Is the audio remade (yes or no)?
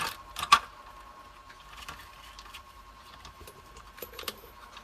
yes